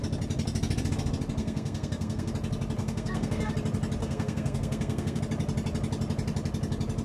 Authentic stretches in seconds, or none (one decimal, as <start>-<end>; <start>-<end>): 0.0-1.4; 2.3-2.8; 3.5-4.0; 5.2-7.0